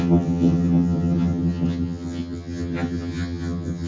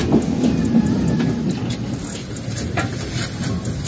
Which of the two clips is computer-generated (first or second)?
first